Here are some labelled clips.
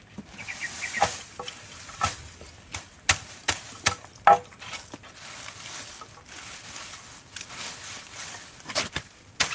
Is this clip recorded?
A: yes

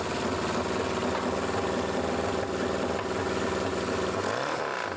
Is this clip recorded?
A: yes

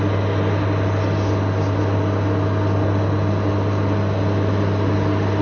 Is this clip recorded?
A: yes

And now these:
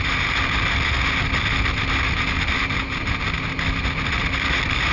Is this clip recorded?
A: yes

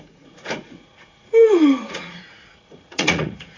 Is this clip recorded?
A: no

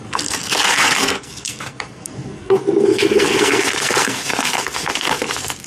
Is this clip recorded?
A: no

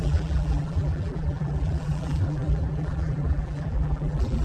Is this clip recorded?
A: no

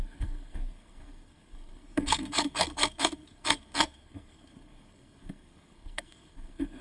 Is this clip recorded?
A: no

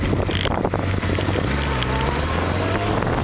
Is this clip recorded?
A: yes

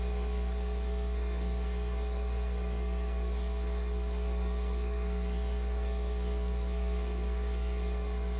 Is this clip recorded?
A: no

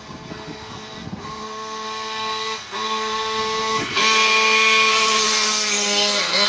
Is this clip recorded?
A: no